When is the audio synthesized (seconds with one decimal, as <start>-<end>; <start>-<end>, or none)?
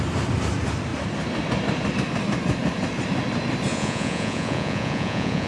3.7-5.5